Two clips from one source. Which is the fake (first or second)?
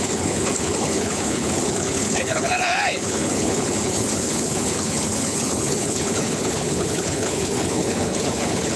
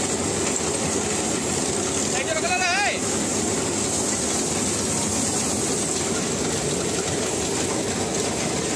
first